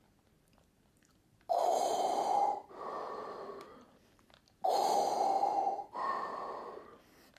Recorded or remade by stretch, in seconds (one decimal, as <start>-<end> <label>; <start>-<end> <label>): 0.0-7.4 recorded